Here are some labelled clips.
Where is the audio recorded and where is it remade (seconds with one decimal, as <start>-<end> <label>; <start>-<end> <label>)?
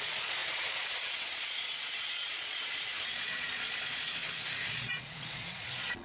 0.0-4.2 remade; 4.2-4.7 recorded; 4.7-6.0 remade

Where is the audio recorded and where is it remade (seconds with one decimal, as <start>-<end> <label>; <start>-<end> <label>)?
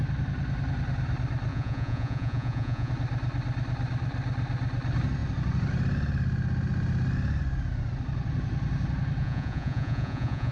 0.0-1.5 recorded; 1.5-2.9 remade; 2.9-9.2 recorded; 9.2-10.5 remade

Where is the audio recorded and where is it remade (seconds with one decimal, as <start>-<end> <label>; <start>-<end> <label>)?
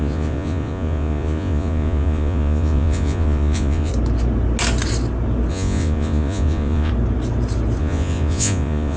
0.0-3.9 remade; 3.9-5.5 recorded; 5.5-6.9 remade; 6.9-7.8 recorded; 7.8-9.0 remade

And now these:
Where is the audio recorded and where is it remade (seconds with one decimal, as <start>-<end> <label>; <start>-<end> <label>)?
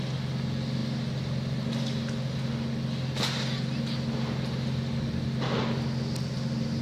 0.0-6.8 recorded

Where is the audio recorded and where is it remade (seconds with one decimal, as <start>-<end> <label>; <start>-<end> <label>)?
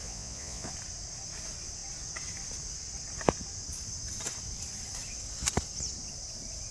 0.0-0.7 remade; 0.7-6.7 recorded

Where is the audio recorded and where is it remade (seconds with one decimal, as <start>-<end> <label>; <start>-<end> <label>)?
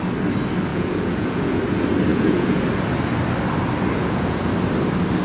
0.0-0.7 recorded; 0.7-1.6 remade; 1.6-2.1 recorded; 2.1-2.6 remade; 2.6-4.0 recorded; 4.0-4.5 remade; 4.5-5.2 recorded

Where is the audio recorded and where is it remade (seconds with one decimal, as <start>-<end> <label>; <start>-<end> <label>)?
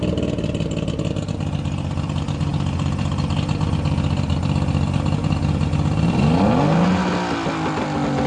0.0-8.3 recorded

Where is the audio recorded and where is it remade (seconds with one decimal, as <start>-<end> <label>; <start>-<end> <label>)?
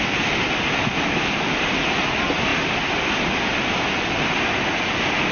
0.0-5.3 recorded